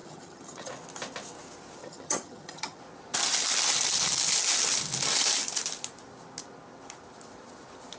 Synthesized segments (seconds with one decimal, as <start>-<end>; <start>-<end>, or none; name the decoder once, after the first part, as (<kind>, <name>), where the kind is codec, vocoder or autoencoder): 0.0-0.7 (vocoder, HiFi-GAN); 1.8-2.8